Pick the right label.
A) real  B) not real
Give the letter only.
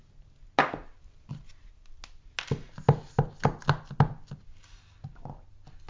A